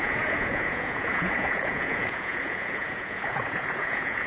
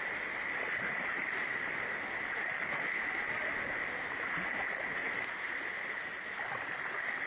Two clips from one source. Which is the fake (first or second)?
first